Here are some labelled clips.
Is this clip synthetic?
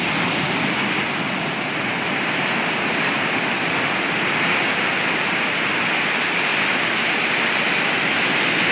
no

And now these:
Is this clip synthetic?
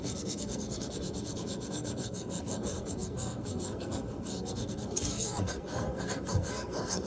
yes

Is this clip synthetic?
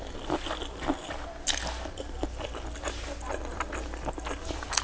no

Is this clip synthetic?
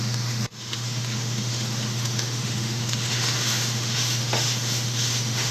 yes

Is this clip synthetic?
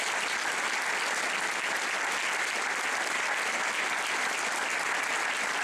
no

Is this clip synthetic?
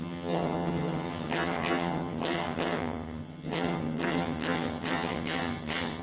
yes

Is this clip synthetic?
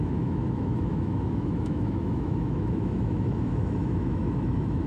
yes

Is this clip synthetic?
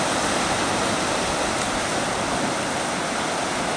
no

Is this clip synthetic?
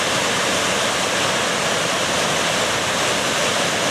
no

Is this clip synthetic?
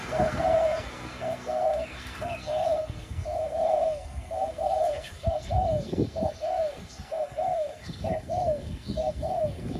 yes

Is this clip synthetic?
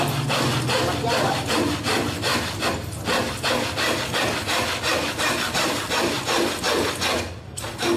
no